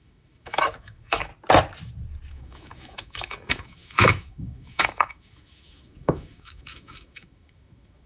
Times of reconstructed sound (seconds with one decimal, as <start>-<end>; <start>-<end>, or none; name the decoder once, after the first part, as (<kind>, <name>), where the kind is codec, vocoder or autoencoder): 0.0-1.3 (autoencoder, DAC-VAE); 2.3-8.1